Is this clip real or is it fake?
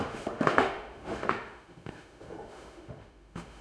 fake